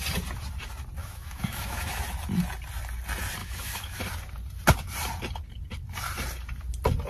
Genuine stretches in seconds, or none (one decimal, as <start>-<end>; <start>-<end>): 0.0-1.0; 2.0-3.4; 4.0-7.1